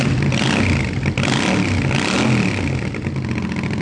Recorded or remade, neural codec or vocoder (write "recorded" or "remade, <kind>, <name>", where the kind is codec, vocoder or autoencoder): recorded